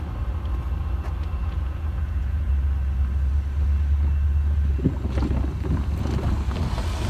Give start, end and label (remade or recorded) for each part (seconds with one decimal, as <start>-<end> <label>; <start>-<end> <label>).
0.0-1.4 recorded; 1.4-2.5 remade; 2.5-7.1 recorded